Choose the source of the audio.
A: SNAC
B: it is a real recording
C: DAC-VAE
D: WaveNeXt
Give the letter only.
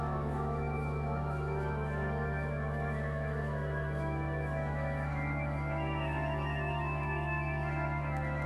C